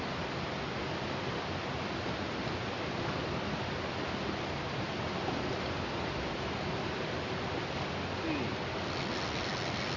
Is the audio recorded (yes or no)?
yes